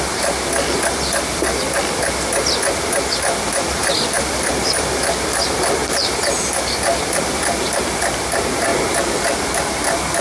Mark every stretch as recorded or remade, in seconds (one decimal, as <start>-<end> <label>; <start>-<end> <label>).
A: 0.0-1.3 recorded; 1.3-1.9 remade; 1.9-3.8 recorded; 3.8-7.8 remade; 7.8-10.2 recorded